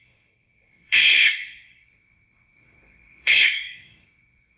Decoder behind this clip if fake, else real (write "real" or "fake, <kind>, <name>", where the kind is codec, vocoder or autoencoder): fake, codec, SNAC